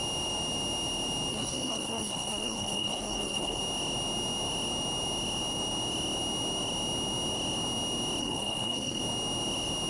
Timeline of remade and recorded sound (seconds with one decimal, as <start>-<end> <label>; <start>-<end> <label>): 0.0-1.3 recorded; 1.3-3.6 remade; 3.6-8.2 recorded; 8.2-9.0 remade; 9.0-9.9 recorded